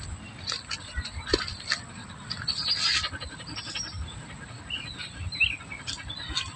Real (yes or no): yes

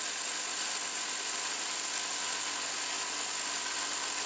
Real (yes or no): yes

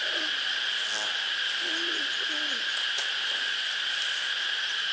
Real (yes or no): yes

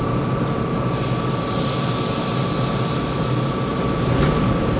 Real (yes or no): yes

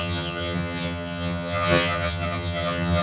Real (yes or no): no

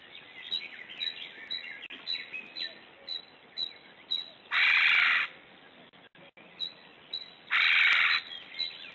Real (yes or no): yes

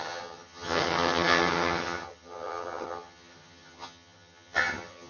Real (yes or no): no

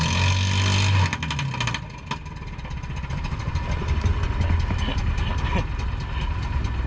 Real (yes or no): yes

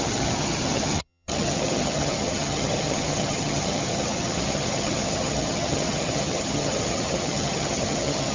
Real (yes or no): no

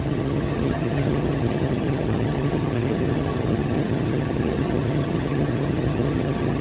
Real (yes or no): no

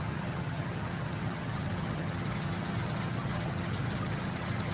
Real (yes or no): no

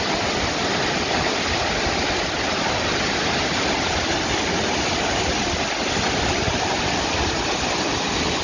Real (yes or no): yes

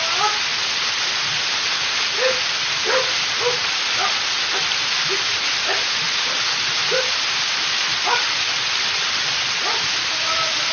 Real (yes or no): yes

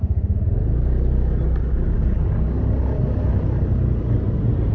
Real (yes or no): yes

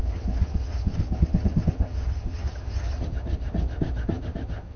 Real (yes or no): no